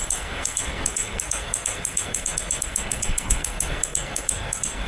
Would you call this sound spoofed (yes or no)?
yes